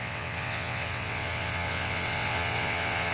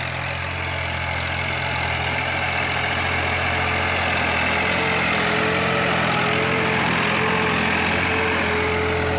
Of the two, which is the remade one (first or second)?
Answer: first